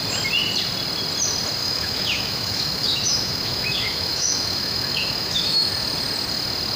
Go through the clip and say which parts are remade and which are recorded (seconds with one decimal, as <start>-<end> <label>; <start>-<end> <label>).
0.0-1.6 recorded; 1.6-5.7 remade; 5.7-6.8 recorded